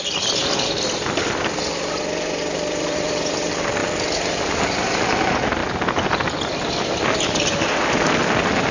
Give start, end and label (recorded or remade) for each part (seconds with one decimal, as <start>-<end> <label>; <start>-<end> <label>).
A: 0.0-8.7 recorded